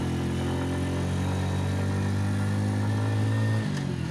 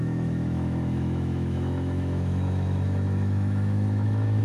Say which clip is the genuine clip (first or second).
first